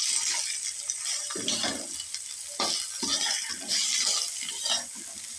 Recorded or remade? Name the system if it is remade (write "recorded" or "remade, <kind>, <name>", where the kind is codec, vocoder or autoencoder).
recorded